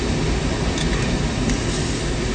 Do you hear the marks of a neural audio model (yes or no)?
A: no